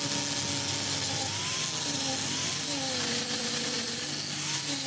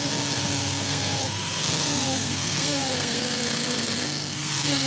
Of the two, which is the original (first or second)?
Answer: first